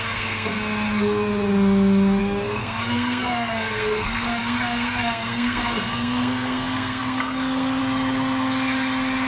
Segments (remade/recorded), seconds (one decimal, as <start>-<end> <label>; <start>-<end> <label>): 0.0-0.5 remade; 0.5-2.2 recorded; 2.2-7.8 remade; 7.8-9.3 recorded